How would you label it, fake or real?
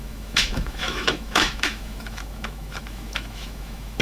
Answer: fake